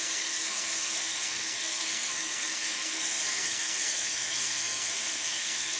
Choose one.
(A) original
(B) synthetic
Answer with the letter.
B